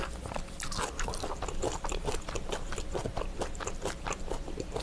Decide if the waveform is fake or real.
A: real